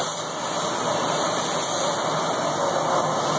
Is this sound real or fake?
real